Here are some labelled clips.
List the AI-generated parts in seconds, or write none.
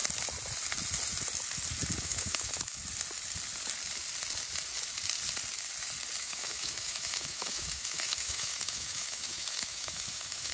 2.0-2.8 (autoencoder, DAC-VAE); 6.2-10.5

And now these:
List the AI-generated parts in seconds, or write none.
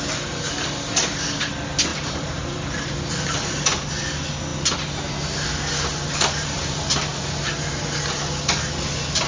1.9-2.9 (vocoder, BigVGAN v2); 5.9-7.1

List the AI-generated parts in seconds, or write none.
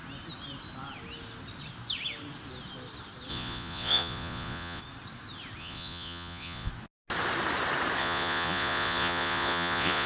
3.3-4.8 (vocoder, Vocos); 5.6-6.7; 8.0-10.1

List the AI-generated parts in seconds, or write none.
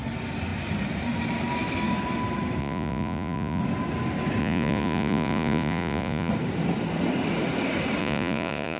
2.6-3.6 (vocoder, Vocos); 4.4-6.3; 8.0-8.8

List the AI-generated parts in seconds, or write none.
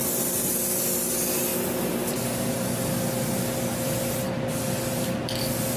none